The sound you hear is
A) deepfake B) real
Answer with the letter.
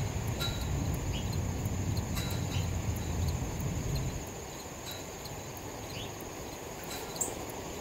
B